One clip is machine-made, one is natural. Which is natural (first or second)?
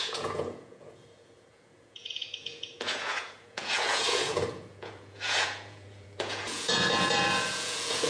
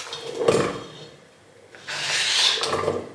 second